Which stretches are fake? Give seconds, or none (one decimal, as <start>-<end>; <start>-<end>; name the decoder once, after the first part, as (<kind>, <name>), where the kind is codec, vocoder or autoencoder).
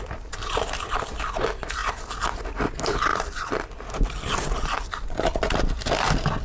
3.1-3.7 (vocoder, BigVGAN v2)